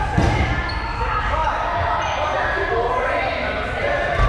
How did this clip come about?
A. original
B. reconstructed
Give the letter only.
A